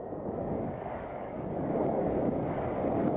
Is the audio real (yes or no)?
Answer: no